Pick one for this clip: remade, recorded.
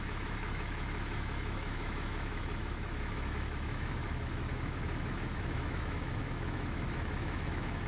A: remade